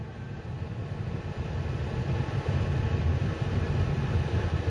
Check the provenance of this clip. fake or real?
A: real